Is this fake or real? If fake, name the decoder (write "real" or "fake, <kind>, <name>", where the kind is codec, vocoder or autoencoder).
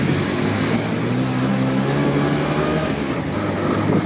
real